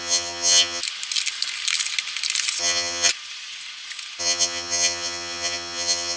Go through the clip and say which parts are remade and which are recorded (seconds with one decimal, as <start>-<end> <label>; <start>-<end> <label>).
0.0-0.8 remade; 0.8-2.6 recorded; 2.6-3.1 remade; 3.1-4.2 recorded; 4.2-6.2 remade